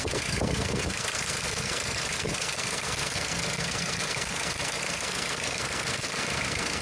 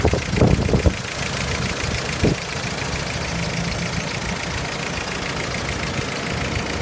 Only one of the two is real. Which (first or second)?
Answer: second